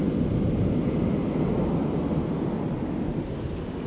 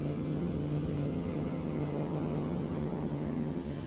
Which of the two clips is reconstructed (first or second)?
second